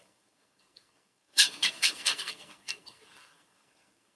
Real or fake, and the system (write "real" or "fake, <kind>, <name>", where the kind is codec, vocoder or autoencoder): fake, codec, SNAC